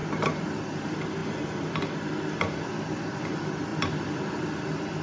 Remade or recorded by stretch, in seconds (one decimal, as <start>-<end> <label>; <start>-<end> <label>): 0.0-3.7 recorded; 3.7-4.4 remade; 4.4-5.0 recorded